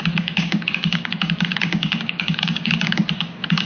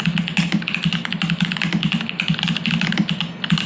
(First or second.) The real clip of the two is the second